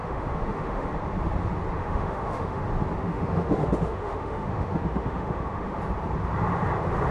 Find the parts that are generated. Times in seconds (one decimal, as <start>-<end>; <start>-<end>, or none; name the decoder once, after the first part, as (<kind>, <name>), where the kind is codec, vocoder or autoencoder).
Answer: 0.0-0.9 (autoencoder, DAC-VAE); 1.8-2.6; 3.0-5.8